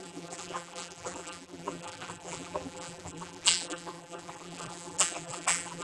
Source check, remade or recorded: remade